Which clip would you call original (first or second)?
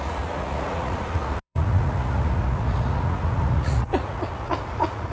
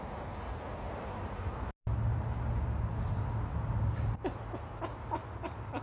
second